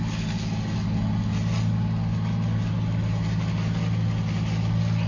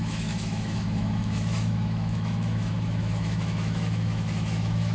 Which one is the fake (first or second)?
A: second